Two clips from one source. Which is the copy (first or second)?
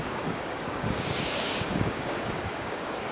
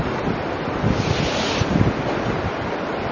first